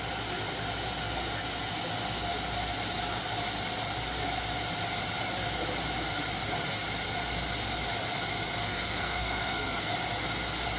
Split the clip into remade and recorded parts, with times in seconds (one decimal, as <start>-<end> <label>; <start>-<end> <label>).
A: 0.0-8.6 recorded; 8.6-9.9 remade; 9.9-10.8 recorded